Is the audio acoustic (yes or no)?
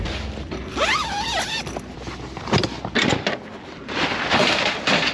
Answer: yes